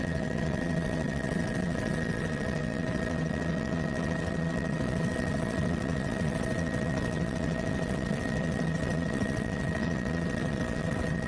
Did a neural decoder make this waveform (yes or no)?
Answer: yes